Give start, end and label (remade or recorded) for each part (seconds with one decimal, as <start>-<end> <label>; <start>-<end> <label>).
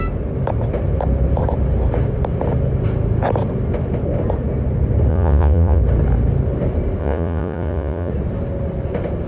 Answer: 0.0-5.1 recorded; 5.1-5.8 remade; 5.8-7.0 recorded; 7.0-8.1 remade; 8.1-9.3 recorded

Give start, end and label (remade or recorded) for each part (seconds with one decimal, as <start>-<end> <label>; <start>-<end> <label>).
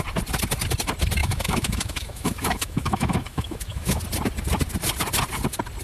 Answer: 0.0-1.2 recorded; 1.2-4.0 remade; 4.0-5.8 recorded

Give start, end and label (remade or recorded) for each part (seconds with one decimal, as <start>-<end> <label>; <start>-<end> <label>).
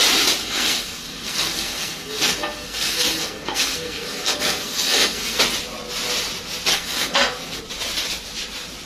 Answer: 0.0-0.4 recorded; 0.4-5.4 remade; 5.4-6.7 recorded; 6.7-7.6 remade; 7.6-8.9 recorded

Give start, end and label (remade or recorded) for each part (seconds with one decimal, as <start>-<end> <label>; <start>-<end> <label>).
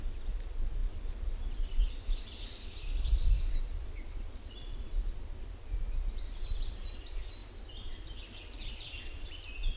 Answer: 0.0-9.8 recorded